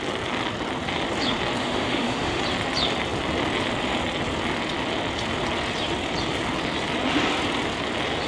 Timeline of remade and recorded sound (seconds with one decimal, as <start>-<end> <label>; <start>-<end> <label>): 0.0-1.6 recorded; 1.6-2.4 remade; 2.4-8.3 recorded